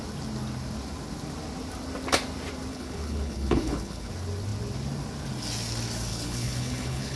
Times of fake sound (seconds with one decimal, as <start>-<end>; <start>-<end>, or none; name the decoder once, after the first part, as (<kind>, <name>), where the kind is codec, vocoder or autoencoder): 2.7-4.1 (codec, HILCodec); 6.1-7.2